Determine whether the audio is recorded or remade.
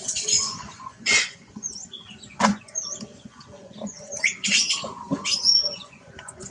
remade